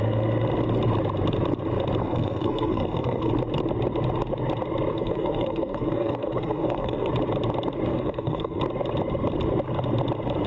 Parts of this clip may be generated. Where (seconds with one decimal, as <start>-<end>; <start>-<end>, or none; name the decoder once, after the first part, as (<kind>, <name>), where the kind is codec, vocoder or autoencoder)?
2.0-3.3 (codec, SNAC); 4.9-7.1; 7.9-8.6